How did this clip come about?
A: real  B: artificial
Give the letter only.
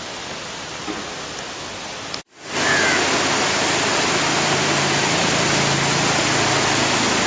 A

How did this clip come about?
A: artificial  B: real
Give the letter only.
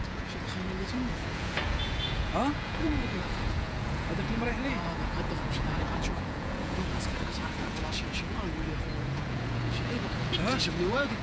A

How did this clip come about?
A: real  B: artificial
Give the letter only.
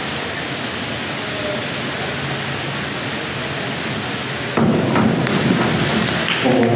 A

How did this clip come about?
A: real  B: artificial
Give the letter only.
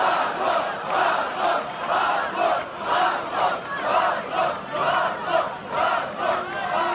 A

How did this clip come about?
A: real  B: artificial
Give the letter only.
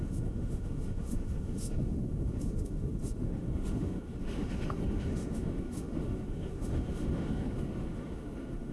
B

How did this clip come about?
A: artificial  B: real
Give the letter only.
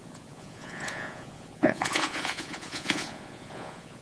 A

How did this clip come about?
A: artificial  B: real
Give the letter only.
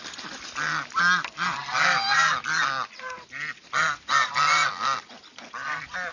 B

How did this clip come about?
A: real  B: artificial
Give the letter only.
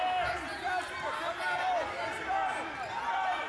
A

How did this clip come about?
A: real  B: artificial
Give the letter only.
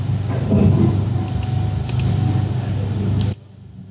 A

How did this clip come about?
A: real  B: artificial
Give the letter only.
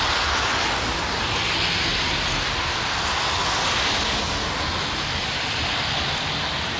A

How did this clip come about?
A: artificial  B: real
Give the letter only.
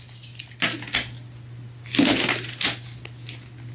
B